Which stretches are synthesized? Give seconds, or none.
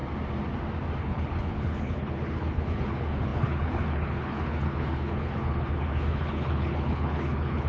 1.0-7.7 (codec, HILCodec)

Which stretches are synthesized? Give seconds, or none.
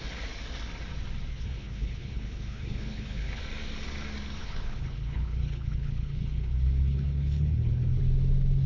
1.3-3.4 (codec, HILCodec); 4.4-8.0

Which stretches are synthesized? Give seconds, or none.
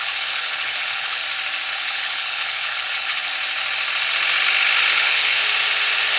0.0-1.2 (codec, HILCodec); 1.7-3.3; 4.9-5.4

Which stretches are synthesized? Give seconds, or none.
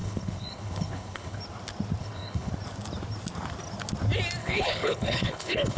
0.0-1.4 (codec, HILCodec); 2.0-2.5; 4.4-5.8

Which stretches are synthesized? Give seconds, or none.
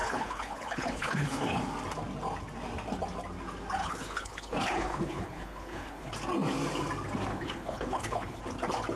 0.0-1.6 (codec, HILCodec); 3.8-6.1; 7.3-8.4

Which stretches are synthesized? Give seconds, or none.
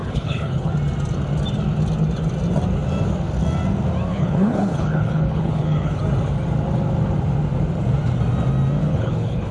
0.0-0.7 (codec, HILCodec); 4.1-6.0; 8.8-9.5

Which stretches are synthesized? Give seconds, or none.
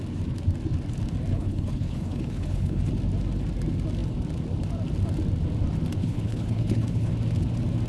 1.3-2.9 (codec, HILCodec); 6.0-7.1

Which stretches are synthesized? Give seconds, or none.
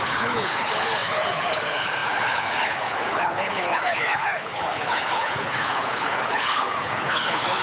0.0-7.6 (codec, HILCodec)